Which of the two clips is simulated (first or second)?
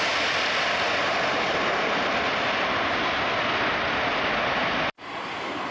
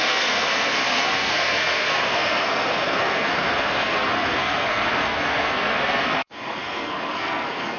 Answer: second